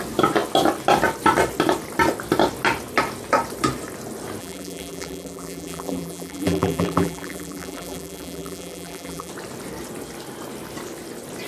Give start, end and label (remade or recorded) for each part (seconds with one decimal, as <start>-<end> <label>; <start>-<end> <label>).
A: 0.0-4.4 recorded; 4.4-9.3 remade; 9.3-11.5 recorded